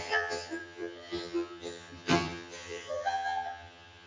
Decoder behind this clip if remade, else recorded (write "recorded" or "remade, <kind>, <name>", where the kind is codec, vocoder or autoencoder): remade, vocoder, HiFi-GAN